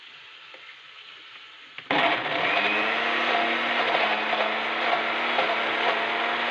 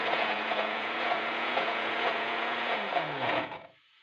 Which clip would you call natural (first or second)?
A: first